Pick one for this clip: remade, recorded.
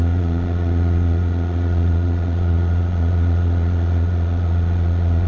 remade